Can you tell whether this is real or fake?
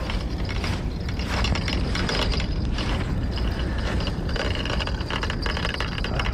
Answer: real